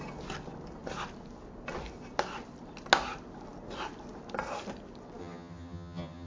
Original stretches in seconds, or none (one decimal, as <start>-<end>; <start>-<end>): 0.0-5.2